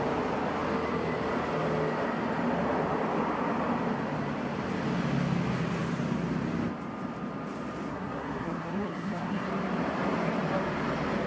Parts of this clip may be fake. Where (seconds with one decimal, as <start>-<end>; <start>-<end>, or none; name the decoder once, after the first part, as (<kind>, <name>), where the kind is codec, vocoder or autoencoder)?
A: 7.9-9.5 (codec, SNAC)